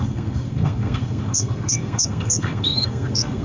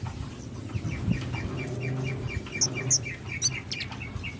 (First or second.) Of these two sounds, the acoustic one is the second